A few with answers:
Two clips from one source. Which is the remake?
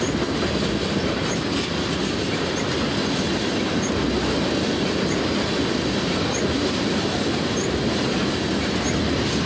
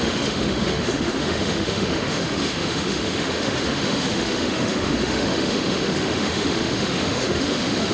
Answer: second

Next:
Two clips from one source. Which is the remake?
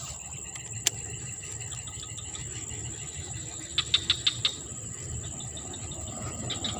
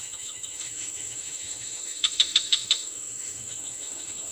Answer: second